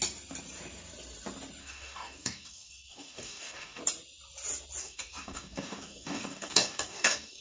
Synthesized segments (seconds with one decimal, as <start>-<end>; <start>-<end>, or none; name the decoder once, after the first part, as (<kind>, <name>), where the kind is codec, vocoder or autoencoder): 1.6-3.8 (codec, DAC); 4.8-7.4